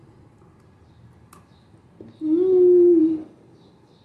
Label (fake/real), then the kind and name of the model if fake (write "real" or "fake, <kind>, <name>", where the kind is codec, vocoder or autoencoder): real